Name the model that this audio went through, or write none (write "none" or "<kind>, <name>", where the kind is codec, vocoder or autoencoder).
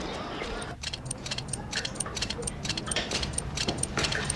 vocoder, BigVGAN v2